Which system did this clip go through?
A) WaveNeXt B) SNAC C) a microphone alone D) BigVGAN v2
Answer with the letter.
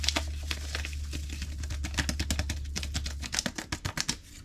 C